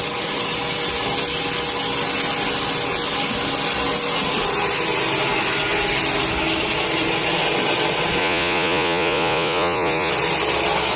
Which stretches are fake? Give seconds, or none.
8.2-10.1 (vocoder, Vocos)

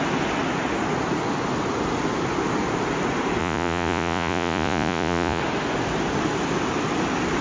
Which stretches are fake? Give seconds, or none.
3.4-5.4 (vocoder, Vocos)

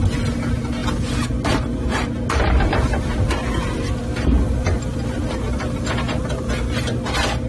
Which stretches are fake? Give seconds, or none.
none

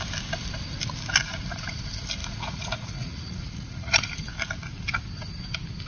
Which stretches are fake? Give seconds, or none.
1.2-1.8 (vocoder, Vocos); 2.2-4.1

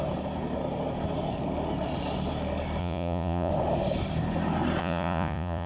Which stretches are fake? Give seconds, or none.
2.8-3.5 (vocoder, Vocos); 4.8-5.7

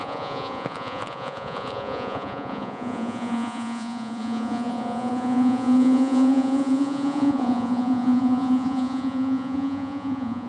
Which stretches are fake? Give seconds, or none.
0.0-10.5 (vocoder, Vocos)